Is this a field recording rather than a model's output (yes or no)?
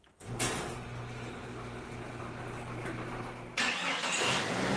yes